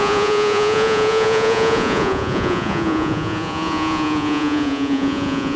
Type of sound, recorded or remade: remade